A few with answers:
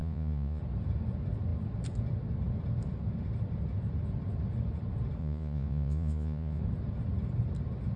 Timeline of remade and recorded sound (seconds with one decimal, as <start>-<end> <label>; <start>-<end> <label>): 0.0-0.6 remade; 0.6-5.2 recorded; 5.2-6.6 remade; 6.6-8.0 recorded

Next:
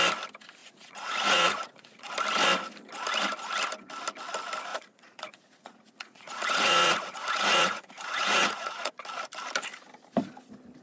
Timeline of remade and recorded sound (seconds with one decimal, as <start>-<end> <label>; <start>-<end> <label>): 0.0-0.6 recorded; 0.6-2.1 remade; 2.1-4.7 recorded; 4.7-8.9 remade; 8.9-10.8 recorded

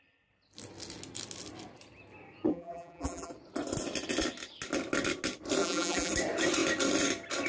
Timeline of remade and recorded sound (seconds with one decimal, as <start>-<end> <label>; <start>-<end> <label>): 0.0-2.5 recorded; 2.5-3.3 remade; 3.3-5.6 recorded; 5.6-6.1 remade; 6.1-7.5 recorded

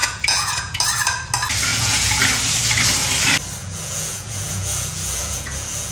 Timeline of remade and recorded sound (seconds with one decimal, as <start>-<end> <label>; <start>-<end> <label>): 0.0-0.8 remade; 0.8-1.7 recorded; 1.7-2.2 remade; 2.2-3.6 recorded; 3.6-5.9 remade

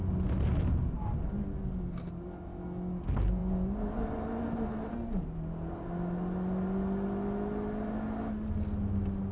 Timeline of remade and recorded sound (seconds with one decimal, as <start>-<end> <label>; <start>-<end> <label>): 0.0-9.3 recorded

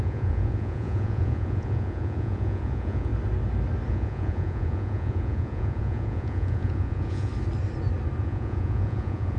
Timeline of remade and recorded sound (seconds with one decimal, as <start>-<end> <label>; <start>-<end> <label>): 0.0-3.1 remade; 3.1-3.9 recorded; 3.9-7.3 remade; 7.3-8.2 recorded; 8.2-9.4 remade